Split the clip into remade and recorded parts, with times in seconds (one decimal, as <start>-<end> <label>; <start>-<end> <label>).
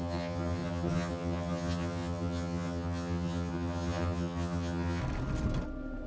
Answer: 0.0-5.0 remade; 5.0-6.1 recorded